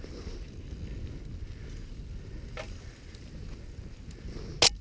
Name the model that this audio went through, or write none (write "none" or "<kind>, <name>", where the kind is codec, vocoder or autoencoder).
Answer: none